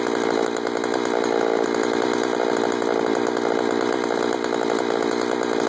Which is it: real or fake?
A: real